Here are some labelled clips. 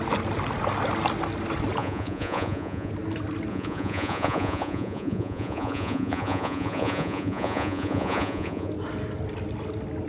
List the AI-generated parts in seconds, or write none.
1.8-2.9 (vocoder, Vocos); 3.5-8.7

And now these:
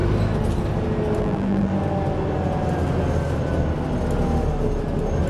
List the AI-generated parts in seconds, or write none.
1.2-1.7 (vocoder, BigVGAN v2)